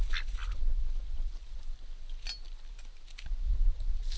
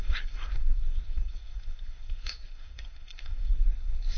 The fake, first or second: second